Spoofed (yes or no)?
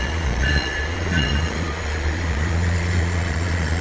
yes